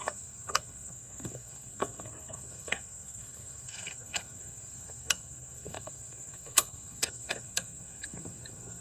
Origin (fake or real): fake